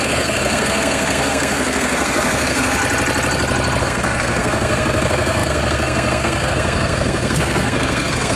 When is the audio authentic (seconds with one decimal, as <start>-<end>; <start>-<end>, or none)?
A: 2.8-3.8